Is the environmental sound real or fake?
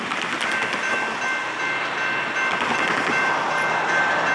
real